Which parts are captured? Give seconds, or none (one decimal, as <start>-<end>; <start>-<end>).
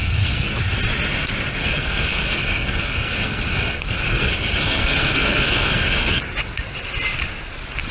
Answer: 0.6-1.6; 6.2-7.9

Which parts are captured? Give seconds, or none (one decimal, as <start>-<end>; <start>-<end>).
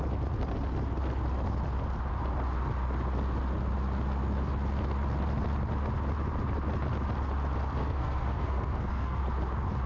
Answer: 0.0-7.8; 9.2-9.9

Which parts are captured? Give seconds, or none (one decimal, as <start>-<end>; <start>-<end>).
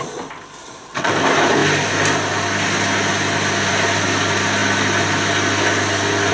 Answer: 0.0-0.6; 1.1-6.3